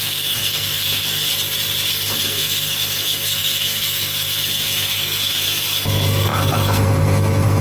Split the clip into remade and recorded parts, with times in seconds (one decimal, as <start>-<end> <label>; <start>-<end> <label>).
0.0-1.3 remade; 1.3-1.9 recorded; 1.9-7.6 remade